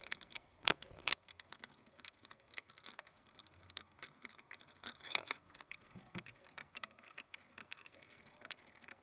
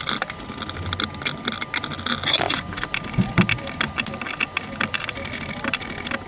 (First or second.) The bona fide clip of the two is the second